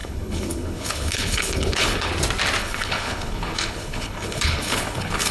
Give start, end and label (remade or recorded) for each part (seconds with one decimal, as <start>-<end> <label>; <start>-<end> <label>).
0.0-2.1 remade; 2.1-2.6 recorded; 2.6-5.3 remade